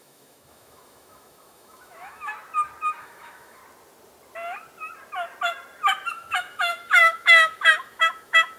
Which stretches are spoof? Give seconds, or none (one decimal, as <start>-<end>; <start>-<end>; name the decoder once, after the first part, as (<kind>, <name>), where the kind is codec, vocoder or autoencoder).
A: 0.0-2.3 (autoencoder, DAC-VAE); 3.0-3.6; 6.1-8.6